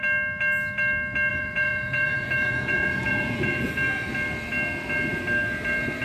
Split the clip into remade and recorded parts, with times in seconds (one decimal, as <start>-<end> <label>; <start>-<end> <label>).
0.0-1.3 recorded; 1.3-3.7 remade; 3.7-6.0 recorded